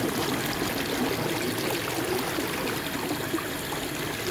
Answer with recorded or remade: recorded